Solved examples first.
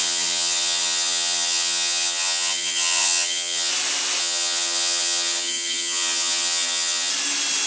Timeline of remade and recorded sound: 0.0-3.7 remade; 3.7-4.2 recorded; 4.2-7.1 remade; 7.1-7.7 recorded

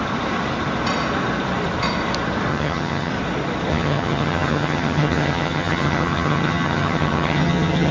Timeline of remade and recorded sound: 0.0-2.5 recorded; 2.5-3.1 remade; 3.1-3.7 recorded; 3.7-7.9 remade